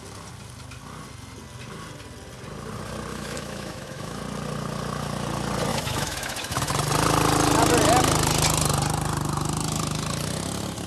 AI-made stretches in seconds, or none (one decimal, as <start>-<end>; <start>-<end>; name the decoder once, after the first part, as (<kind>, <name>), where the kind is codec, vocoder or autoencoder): 3.1-4.2 (autoencoder, DAC-VAE); 5.7-6.7